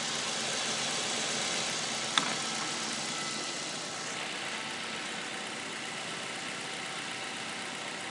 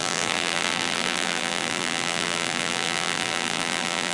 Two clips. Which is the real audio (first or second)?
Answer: first